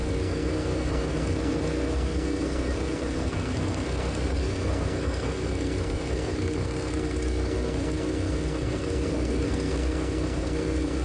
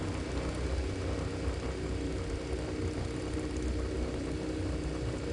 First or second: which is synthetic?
first